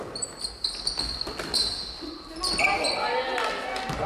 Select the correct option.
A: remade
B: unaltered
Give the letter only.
B